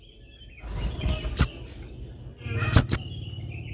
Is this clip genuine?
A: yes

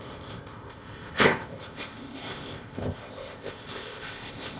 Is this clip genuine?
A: no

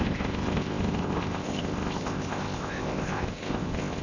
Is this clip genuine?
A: no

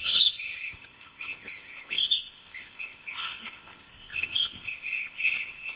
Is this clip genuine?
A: no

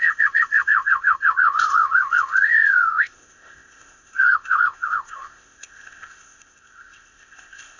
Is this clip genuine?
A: no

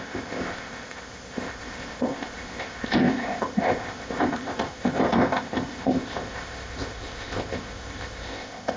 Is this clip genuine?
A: no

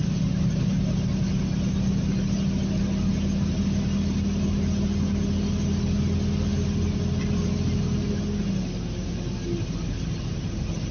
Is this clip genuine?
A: yes